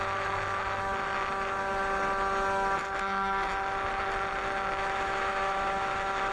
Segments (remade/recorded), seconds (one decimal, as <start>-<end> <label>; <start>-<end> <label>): 0.0-4.8 recorded; 4.8-6.3 remade

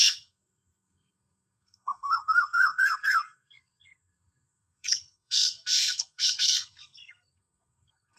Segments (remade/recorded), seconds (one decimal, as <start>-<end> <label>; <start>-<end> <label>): 0.0-8.2 remade

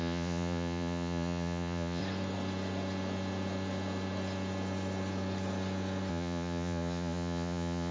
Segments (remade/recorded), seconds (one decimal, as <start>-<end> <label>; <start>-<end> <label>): 0.0-2.0 remade; 2.0-6.1 recorded; 6.1-7.9 remade

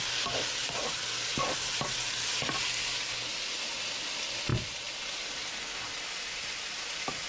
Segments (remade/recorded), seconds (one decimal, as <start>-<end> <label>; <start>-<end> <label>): 0.0-1.3 recorded; 1.3-2.2 remade; 2.2-7.3 recorded

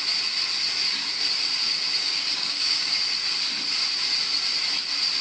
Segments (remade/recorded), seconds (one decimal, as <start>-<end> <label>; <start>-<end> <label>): 0.0-2.0 recorded; 2.0-3.0 remade; 3.0-5.2 recorded

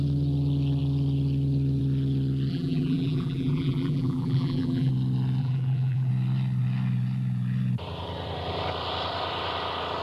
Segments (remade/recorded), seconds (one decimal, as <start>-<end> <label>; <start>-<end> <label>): 0.0-2.5 recorded; 2.5-4.9 remade; 4.9-5.4 recorded; 5.4-6.1 remade; 6.1-10.0 recorded